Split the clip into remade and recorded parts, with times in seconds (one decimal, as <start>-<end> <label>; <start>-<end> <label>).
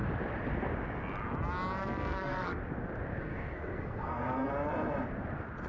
0.0-1.8 recorded; 1.8-2.6 remade; 2.6-3.2 recorded; 3.2-4.5 remade; 4.5-5.7 recorded